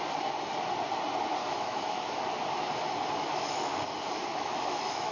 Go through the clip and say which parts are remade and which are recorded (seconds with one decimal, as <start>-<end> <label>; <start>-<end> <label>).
0.0-1.4 recorded; 1.4-2.2 remade; 2.2-3.2 recorded; 3.2-3.9 remade; 3.9-4.3 recorded; 4.3-5.1 remade